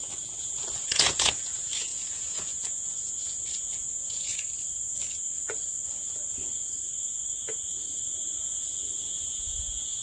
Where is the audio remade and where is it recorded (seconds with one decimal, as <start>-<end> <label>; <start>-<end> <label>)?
0.0-4.3 remade; 4.3-9.0 recorded; 9.0-10.0 remade